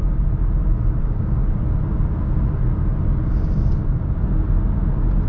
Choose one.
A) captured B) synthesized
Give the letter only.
A